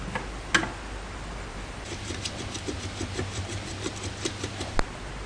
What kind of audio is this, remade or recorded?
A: recorded